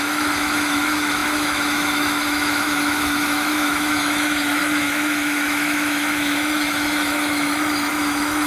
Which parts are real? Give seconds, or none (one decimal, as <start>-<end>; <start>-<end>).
none